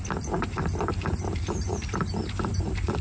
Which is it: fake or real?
real